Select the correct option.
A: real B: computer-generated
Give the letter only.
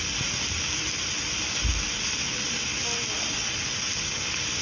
A